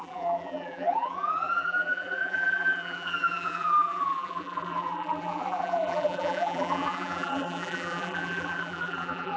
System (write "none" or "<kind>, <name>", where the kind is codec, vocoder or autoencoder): vocoder, BigVGAN v2